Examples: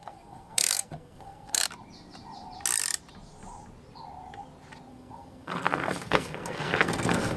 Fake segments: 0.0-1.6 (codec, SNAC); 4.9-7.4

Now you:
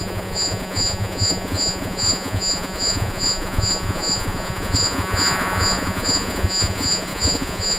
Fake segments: 0.0-7.8 (vocoder, Vocos)

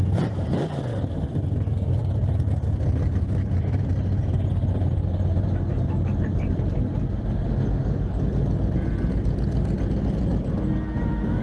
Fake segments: none

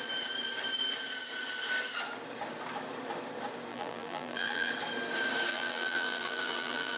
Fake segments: 3.7-4.7 (vocoder, BigVGAN v2); 5.5-7.0

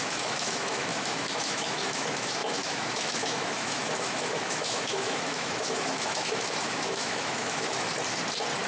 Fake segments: 0.0-7.9 (autoencoder, DAC-VAE)

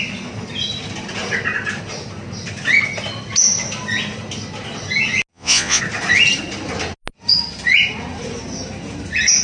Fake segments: 5.3-5.8 (vocoder, Vocos)